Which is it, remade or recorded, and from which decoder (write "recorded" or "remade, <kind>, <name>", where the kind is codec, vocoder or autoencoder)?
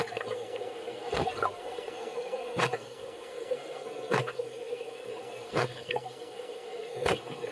remade, codec, SNAC